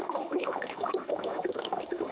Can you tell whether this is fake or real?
fake